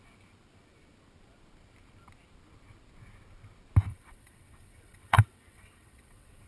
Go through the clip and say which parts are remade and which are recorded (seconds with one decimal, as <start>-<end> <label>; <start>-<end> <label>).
0.0-3.9 recorded; 3.9-6.5 remade